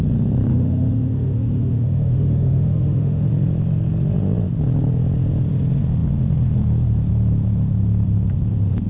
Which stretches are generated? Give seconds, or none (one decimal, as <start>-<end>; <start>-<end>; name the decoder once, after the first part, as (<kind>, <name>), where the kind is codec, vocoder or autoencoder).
0.5-3.3 (autoencoder, DAC-VAE)